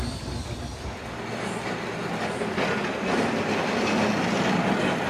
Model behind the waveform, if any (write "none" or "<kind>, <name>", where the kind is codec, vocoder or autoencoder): none